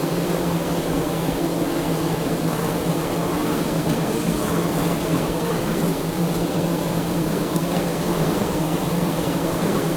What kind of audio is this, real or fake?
fake